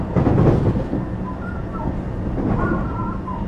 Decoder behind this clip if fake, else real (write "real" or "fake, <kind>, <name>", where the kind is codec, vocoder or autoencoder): real